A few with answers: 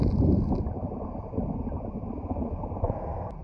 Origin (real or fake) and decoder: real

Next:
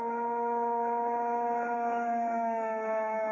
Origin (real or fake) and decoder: fake, autoencoder, DAC-VAE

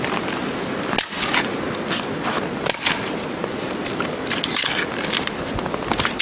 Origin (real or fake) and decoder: real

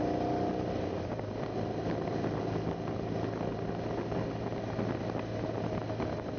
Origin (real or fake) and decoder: real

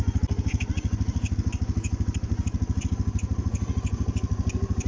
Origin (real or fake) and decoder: real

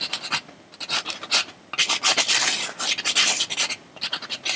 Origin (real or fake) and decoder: real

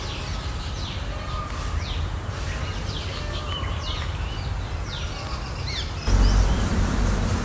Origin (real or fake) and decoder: real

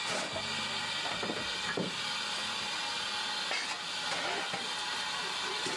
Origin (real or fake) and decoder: real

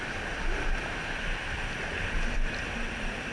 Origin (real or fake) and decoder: fake, vocoder, BigVGAN v2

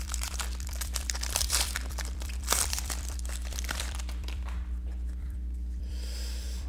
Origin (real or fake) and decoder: fake, vocoder, BigVGAN v2